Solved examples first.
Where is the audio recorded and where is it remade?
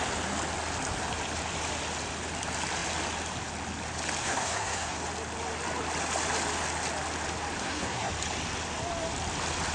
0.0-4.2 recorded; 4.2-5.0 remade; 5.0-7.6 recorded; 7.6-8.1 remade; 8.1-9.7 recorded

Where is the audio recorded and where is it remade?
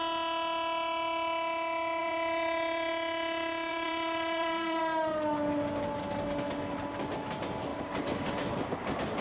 0.0-2.0 recorded; 2.0-2.9 remade; 2.9-3.7 recorded; 3.7-4.8 remade; 4.8-7.7 recorded; 7.7-9.2 remade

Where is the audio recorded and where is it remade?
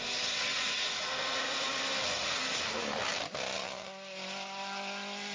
0.0-0.5 recorded; 0.5-1.8 remade; 1.8-5.3 recorded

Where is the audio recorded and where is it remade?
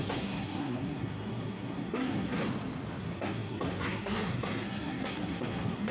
0.0-2.4 remade; 2.4-3.0 recorded; 3.0-5.9 remade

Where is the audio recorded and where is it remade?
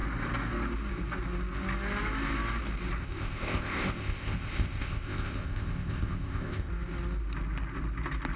0.0-3.0 recorded; 3.0-6.7 remade; 6.7-8.4 recorded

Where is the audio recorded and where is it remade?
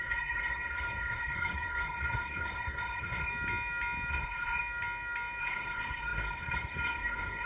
0.0-3.3 remade; 3.3-4.1 recorded; 4.1-4.6 remade; 4.6-5.4 recorded; 5.4-7.5 remade